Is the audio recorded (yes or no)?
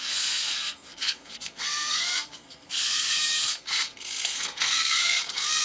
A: no